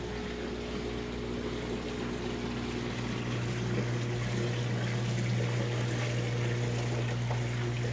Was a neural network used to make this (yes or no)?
no